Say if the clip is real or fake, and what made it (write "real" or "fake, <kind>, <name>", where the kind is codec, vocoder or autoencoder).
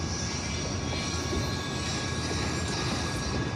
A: real